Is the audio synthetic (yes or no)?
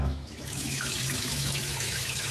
yes